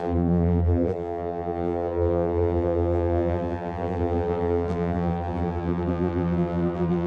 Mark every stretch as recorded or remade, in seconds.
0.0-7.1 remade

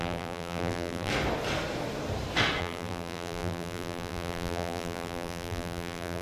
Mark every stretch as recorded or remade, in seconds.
0.0-1.1 remade; 1.1-2.6 recorded; 2.6-6.2 remade

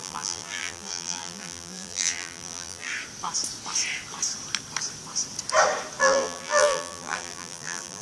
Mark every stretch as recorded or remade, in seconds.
0.0-2.9 remade; 2.9-6.0 recorded; 6.0-8.0 remade

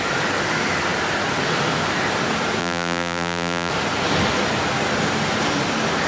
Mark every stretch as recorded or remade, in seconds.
0.0-2.6 recorded; 2.6-3.7 remade; 3.7-6.1 recorded